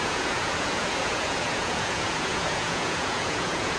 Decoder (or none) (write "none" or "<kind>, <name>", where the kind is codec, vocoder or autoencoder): vocoder, Vocos